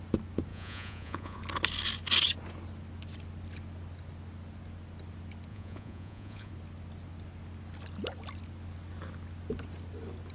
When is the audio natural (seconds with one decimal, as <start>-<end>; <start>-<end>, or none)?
0.0-0.5; 1.4-5.5; 6.5-10.3